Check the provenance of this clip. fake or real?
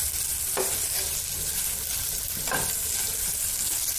real